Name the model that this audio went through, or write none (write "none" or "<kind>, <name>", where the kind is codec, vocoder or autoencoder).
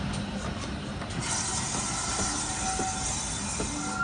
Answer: none